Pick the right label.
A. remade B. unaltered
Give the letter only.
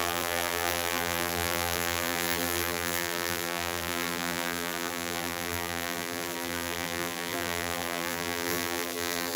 A